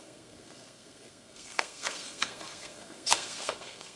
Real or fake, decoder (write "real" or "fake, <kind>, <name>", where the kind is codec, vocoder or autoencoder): fake, codec, SNAC